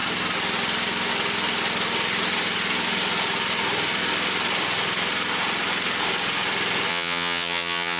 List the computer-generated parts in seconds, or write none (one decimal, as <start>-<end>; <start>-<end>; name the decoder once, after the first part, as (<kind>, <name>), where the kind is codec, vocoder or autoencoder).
6.9-8.0 (vocoder, HiFi-GAN)